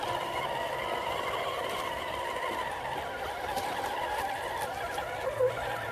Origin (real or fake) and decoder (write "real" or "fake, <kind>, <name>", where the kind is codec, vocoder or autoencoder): real